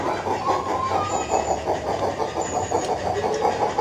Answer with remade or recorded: recorded